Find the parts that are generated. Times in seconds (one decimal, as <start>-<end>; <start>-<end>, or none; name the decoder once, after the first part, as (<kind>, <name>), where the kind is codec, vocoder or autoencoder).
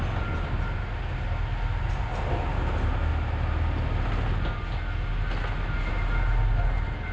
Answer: none